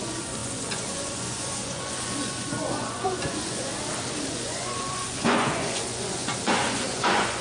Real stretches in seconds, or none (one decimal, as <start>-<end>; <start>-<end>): 3.7-4.3